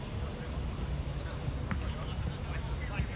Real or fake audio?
real